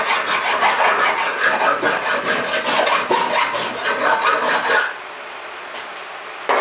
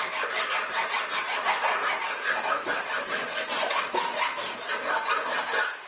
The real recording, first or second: first